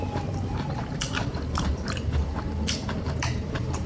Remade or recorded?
recorded